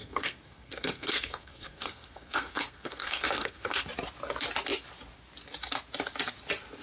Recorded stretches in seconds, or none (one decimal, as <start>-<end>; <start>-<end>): 3.8-6.8